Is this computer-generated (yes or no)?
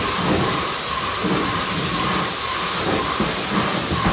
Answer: no